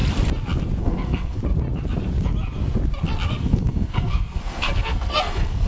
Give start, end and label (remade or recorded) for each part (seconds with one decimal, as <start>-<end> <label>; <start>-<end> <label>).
0.0-0.8 recorded; 0.8-1.4 remade; 1.4-3.4 recorded; 3.4-5.7 remade